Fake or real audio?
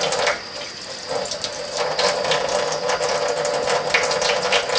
real